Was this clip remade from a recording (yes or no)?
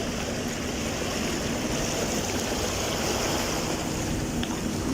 no